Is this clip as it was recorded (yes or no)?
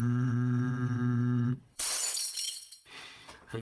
no